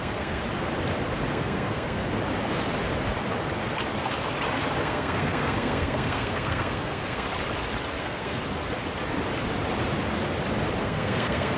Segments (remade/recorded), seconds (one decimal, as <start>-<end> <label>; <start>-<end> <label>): 0.0-0.4 remade; 0.4-1.3 recorded; 1.3-2.0 remade; 2.0-4.8 recorded; 4.8-7.3 remade; 7.3-8.0 recorded; 8.0-8.4 remade; 8.4-10.8 recorded; 10.8-11.6 remade